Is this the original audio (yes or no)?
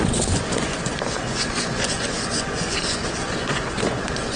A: no